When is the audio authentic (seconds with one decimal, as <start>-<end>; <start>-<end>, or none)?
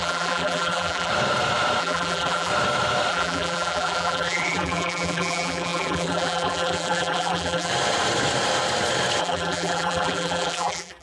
1.1-1.8; 2.5-3.1; 7.7-9.2